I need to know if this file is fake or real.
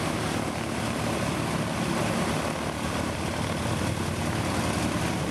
real